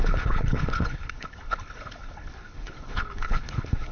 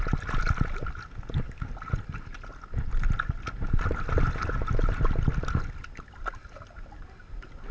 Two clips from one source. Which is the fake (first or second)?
first